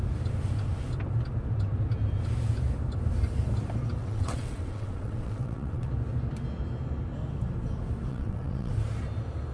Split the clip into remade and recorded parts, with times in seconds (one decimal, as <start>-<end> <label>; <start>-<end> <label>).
0.0-4.0 recorded; 4.0-5.9 remade; 5.9-8.1 recorded; 8.1-8.7 remade; 8.7-9.5 recorded